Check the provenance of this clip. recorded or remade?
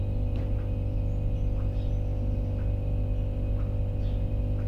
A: recorded